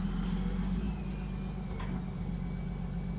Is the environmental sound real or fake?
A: real